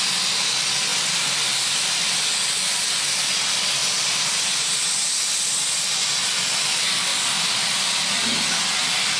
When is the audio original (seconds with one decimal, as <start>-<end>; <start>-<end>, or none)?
0.0-9.2